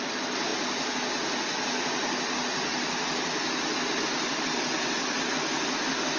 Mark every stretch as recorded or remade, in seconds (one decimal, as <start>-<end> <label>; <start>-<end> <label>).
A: 0.0-6.2 recorded